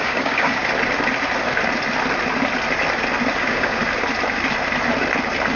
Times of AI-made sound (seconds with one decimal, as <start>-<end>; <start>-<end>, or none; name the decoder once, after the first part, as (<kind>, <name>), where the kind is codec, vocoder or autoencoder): 0.0-0.6 (codec, DAC); 3.4-3.8